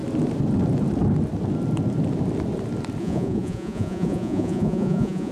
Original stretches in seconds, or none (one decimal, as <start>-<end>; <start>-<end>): 0.0-3.0